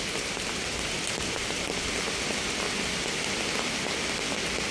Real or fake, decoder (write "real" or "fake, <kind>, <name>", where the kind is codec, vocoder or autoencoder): real